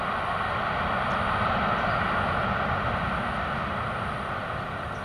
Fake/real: real